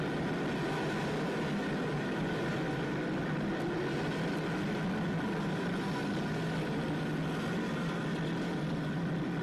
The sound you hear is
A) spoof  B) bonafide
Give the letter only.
B